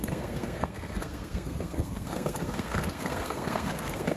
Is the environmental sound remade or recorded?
remade